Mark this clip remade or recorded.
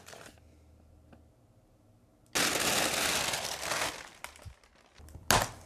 recorded